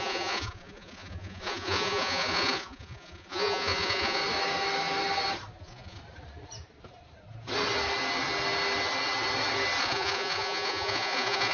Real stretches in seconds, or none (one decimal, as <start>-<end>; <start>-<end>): 4.2-5.6; 6.0-9.8